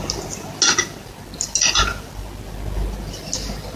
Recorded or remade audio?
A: recorded